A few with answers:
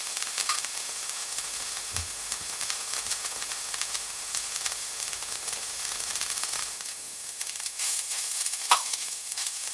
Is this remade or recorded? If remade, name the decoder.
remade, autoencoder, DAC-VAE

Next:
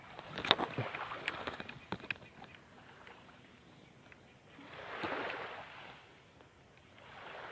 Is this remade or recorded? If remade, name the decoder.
recorded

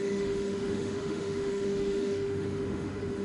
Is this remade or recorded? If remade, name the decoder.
remade, autoencoder, DAC-VAE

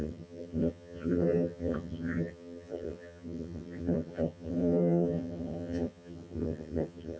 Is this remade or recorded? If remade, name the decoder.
remade, vocoder, HiFi-GAN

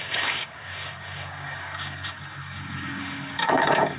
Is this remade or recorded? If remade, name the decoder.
remade, codec, DAC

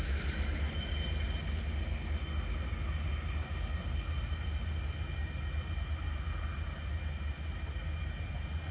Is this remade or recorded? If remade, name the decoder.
recorded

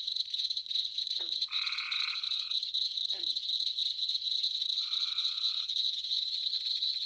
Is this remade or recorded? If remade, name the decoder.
remade, vocoder, Vocos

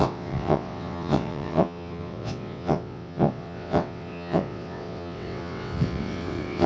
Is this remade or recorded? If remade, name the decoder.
remade, vocoder, WaveNeXt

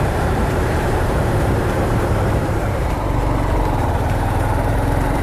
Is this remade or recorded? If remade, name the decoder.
remade, vocoder, BigVGAN v2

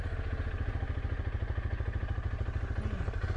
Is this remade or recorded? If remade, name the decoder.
recorded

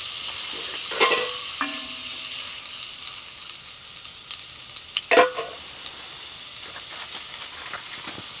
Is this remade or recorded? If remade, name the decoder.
recorded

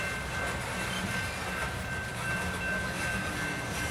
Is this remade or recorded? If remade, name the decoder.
recorded